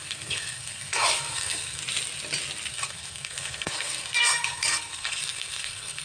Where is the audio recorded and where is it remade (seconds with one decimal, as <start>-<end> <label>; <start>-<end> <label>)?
0.0-1.8 remade; 1.8-2.7 recorded; 2.7-6.0 remade